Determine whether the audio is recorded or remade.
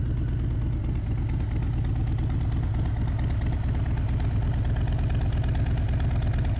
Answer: recorded